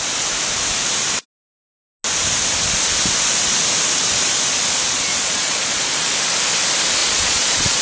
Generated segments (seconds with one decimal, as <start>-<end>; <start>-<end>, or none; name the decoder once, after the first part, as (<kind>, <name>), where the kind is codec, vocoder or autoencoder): 5.1-6.1 (vocoder, Vocos); 7.0-7.8